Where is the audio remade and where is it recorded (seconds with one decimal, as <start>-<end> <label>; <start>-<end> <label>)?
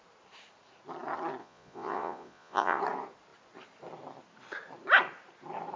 0.0-1.4 recorded; 1.4-2.8 remade; 2.8-5.8 recorded